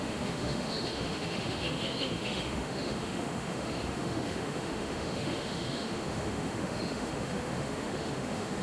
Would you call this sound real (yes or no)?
no